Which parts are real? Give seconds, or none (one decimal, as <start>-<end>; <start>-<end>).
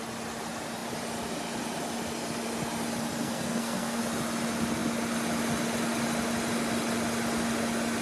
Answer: 0.0-3.2; 4.0-8.0